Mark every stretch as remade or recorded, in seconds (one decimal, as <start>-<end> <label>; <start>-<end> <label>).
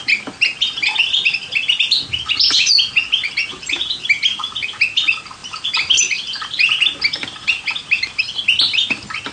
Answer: 0.0-3.5 recorded; 3.5-4.8 remade; 4.8-5.4 recorded; 5.4-6.0 remade; 6.0-9.3 recorded